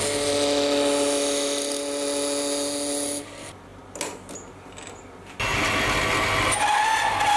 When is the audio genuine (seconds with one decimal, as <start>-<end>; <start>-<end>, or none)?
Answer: 0.0-7.4